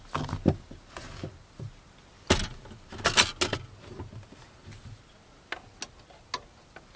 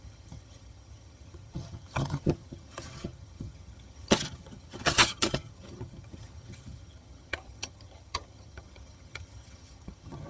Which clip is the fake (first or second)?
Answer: second